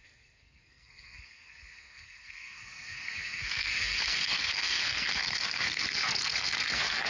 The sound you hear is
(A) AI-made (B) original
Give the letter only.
A